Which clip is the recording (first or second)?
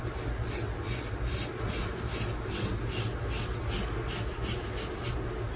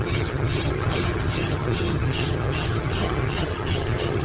first